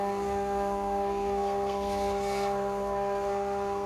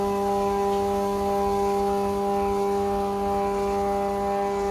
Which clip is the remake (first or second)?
first